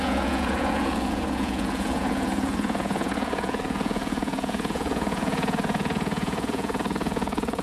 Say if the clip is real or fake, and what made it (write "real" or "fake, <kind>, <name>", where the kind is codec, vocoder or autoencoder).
fake, vocoder, Vocos